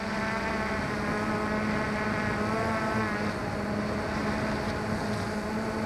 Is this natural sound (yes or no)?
yes